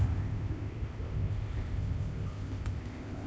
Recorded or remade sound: remade